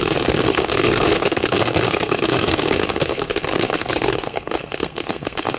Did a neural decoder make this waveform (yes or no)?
yes